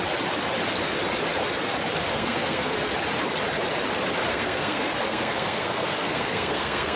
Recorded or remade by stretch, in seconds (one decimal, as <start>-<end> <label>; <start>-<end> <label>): 0.0-2.1 recorded; 2.1-2.7 remade; 2.7-4.3 recorded; 4.3-7.0 remade